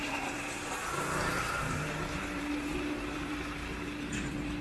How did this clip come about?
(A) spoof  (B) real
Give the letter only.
A